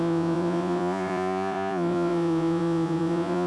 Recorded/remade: remade